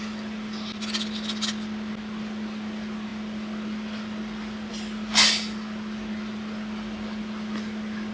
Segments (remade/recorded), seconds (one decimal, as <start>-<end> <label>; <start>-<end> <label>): 0.0-8.1 recorded